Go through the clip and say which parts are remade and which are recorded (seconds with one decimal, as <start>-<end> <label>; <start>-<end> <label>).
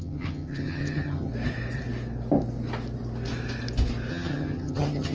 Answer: 0.0-1.3 remade; 1.3-4.1 recorded; 4.1-5.1 remade